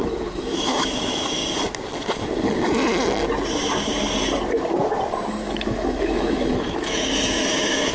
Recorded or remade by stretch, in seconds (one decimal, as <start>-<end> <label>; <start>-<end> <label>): 0.0-1.4 remade; 1.4-5.3 recorded; 5.3-7.9 remade

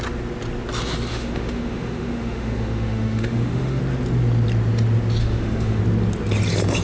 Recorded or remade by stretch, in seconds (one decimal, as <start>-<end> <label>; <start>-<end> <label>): 0.0-1.1 recorded; 1.1-3.8 remade; 3.8-5.2 recorded; 5.2-5.8 remade; 5.8-6.8 recorded

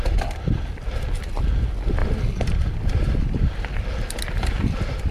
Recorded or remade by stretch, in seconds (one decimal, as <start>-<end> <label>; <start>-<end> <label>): 0.0-5.1 recorded